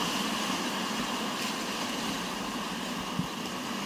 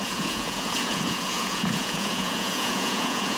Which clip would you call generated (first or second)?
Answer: second